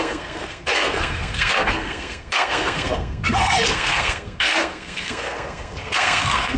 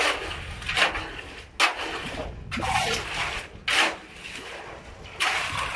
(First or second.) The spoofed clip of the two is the first